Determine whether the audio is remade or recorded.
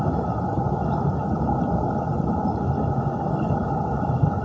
recorded